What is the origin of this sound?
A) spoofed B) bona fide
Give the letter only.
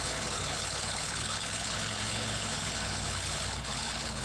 A